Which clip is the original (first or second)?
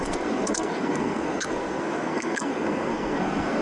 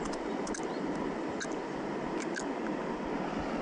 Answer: second